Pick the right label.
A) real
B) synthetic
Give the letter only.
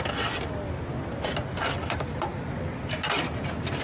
A